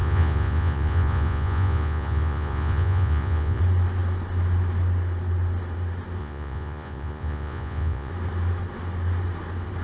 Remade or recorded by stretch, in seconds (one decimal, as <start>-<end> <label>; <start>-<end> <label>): 0.0-3.6 remade; 3.6-6.2 recorded; 6.2-8.1 remade; 8.1-9.8 recorded